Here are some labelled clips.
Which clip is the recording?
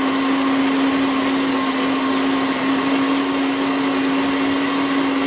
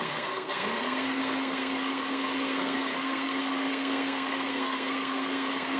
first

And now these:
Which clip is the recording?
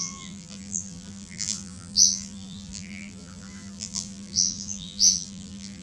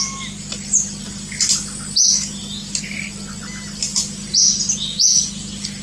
second